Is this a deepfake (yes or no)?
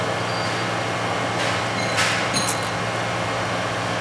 no